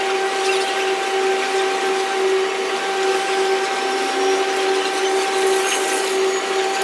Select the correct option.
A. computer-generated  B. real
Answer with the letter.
B